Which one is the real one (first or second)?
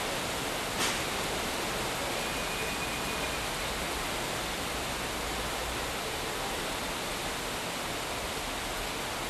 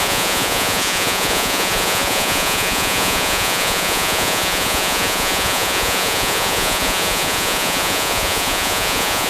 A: first